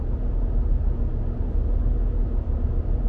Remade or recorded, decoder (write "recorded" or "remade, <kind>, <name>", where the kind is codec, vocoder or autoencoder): recorded